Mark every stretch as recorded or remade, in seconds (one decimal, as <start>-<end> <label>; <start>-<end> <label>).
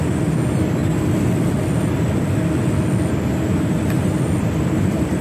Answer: 0.0-0.8 remade; 0.8-3.9 recorded; 3.9-5.2 remade